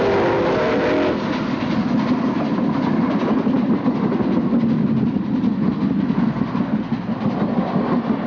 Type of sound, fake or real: real